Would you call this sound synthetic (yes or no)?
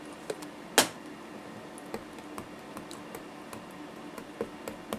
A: no